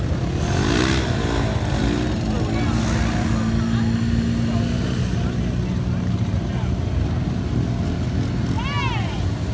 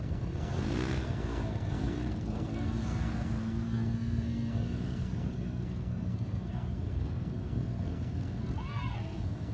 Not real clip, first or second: second